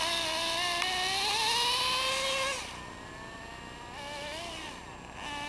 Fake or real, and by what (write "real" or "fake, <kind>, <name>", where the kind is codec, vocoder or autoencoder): real